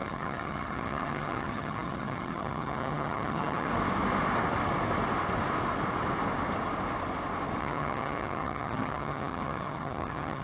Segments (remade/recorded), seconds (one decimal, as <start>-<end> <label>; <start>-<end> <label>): 0.0-3.7 remade; 3.7-7.6 recorded; 7.6-10.4 remade